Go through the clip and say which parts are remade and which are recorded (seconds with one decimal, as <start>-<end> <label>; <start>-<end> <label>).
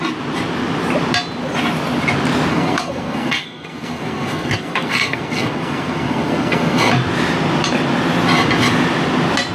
0.0-2.5 recorded; 2.5-6.9 remade; 6.9-9.5 recorded